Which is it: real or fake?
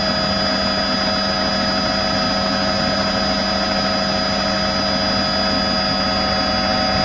real